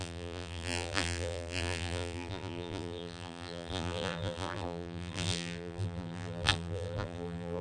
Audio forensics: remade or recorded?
remade